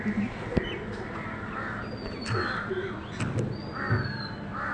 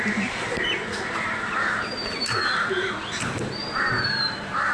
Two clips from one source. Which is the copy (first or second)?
second